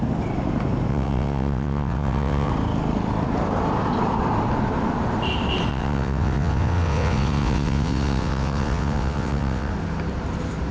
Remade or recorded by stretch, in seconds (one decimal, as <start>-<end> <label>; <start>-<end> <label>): 0.0-0.9 recorded; 0.9-2.5 remade; 2.5-5.7 recorded; 5.7-9.7 remade; 9.7-10.7 recorded